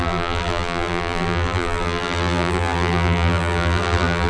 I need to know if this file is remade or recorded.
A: remade